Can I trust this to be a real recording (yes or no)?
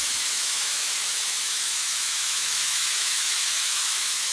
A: no